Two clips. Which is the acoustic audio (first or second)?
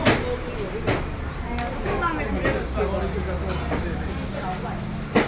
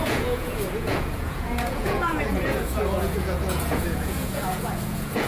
first